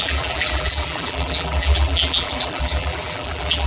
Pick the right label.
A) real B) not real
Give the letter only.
B